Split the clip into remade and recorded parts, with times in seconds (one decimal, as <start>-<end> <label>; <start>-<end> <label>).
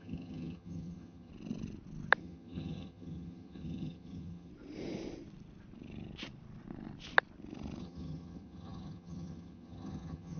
0.0-1.3 remade; 1.3-2.2 recorded; 2.2-4.5 remade; 4.5-7.8 recorded; 7.8-10.4 remade